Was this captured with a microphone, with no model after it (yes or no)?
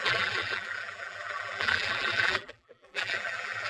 no